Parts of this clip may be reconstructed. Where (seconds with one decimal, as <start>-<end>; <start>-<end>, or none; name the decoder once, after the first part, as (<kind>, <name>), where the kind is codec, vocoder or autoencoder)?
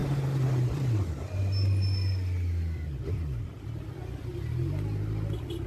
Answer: none